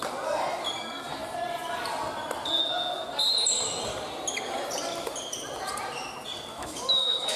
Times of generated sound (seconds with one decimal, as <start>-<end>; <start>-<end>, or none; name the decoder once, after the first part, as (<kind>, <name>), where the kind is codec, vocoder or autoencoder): 6.5-7.4 (autoencoder, DAC-VAE)